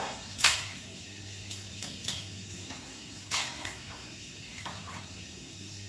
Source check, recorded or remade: remade